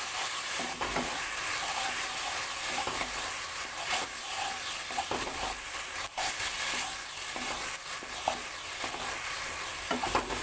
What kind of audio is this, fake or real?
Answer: real